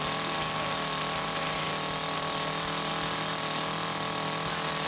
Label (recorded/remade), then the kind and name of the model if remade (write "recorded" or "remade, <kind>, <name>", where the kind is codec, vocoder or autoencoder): recorded